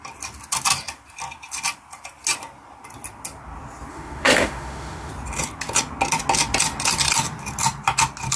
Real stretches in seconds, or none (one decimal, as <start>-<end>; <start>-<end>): 0.0-3.9; 5.1-8.4

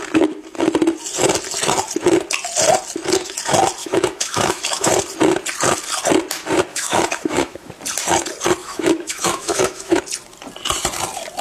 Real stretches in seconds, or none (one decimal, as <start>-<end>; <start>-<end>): 0.0-3.8; 4.9-6.7; 7.7-8.6; 10.0-11.4

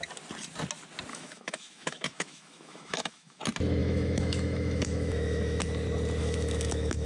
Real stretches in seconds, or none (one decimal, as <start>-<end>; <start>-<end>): 0.0-1.1; 3.4-3.8; 5.6-6.2

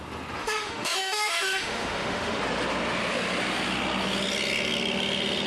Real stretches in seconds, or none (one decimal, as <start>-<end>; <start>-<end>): 0.0-0.4; 2.4-5.5

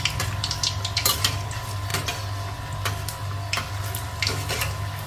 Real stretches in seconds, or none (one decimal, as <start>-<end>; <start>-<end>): 0.0-5.1

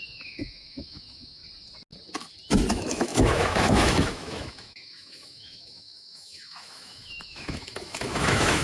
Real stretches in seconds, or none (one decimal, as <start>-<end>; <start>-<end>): 1.4-2.7